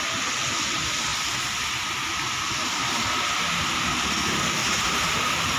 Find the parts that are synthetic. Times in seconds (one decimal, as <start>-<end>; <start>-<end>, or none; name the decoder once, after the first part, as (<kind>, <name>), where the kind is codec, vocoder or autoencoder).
4.6-5.6 (vocoder, BigVGAN v2)